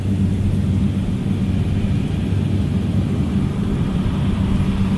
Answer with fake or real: real